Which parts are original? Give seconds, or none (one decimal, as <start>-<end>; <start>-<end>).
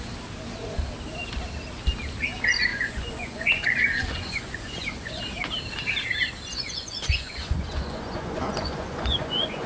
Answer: 0.0-2.7; 5.2-6.5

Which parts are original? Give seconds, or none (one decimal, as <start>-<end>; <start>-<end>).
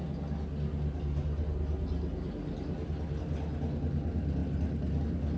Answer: 0.0-5.4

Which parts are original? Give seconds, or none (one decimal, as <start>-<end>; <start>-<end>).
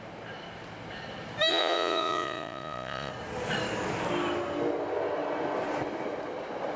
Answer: 0.0-1.5; 3.1-6.8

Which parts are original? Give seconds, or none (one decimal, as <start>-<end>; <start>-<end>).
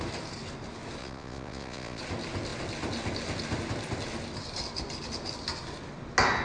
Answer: 0.0-1.0; 2.0-6.4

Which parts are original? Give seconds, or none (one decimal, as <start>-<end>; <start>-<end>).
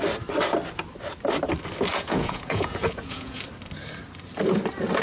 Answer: 0.0-1.9; 3.4-5.0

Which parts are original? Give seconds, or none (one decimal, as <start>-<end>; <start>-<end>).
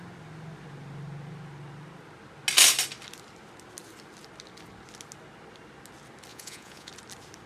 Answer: 0.0-6.3; 6.9-7.5